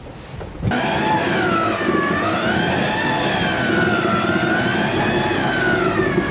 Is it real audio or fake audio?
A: real